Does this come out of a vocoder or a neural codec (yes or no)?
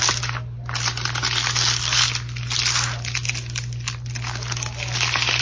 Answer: no